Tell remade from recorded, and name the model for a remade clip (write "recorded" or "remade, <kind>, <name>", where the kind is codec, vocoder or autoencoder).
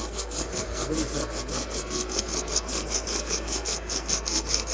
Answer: remade, codec, SNAC